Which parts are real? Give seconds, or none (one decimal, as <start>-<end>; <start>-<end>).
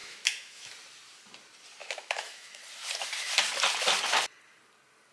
0.7-1.8; 2.6-5.1